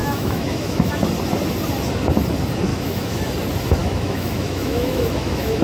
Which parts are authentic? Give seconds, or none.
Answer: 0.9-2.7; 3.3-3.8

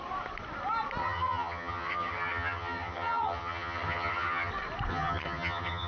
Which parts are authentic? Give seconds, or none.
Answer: 0.0-1.0; 4.5-4.9